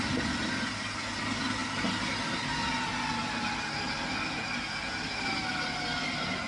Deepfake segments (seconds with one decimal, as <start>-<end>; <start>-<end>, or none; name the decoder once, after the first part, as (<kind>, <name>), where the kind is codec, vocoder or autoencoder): none